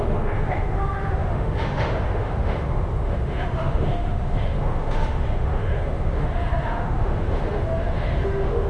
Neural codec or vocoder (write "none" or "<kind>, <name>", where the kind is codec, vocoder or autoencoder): autoencoder, DAC-VAE